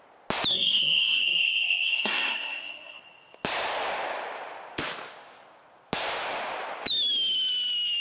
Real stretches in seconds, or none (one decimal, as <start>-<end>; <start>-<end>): 0.0-0.5; 3.0-8.0

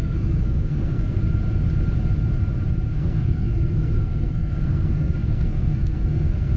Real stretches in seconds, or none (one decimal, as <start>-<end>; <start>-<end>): 1.2-2.9

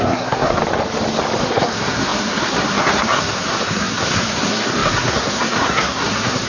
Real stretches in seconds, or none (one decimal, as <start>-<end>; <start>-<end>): 0.6-1.4

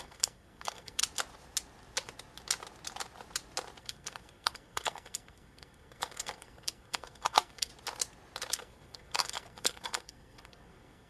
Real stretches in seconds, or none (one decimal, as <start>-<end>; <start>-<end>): 1.0-3.8; 7.7-8.5